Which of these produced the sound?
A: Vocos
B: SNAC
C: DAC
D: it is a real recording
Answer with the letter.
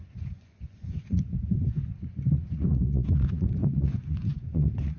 A